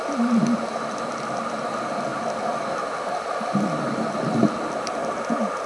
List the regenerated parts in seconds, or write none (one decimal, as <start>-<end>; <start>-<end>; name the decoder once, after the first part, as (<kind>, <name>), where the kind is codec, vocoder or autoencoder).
none